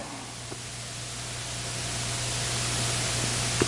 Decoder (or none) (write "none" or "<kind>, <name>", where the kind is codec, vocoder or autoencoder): none